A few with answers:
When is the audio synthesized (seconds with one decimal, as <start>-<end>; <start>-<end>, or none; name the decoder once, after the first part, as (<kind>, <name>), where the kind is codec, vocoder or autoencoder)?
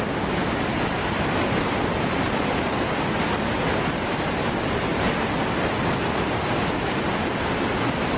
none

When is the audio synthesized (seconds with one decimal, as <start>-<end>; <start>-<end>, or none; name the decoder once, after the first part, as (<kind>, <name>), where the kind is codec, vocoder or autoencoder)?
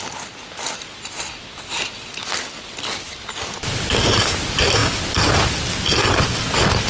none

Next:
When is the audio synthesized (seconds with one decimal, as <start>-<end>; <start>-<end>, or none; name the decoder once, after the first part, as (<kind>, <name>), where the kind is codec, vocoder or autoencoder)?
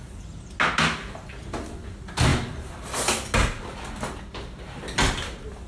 none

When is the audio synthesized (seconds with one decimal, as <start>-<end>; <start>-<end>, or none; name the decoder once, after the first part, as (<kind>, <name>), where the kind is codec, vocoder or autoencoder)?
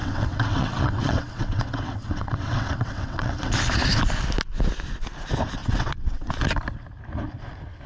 0.0-3.5 (vocoder, WaveNeXt); 5.6-6.3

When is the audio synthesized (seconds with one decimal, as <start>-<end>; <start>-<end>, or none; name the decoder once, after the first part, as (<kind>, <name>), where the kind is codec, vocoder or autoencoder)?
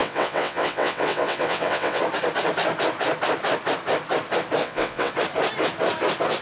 0.0-2.0 (vocoder, WaveNeXt); 4.6-5.1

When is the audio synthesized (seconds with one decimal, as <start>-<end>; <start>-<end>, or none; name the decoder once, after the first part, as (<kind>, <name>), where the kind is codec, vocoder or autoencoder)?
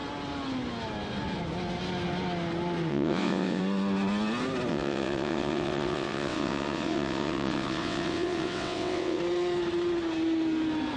2.9-3.6 (vocoder, WaveNeXt); 4.7-9.2